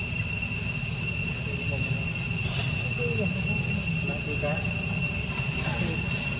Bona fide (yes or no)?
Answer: yes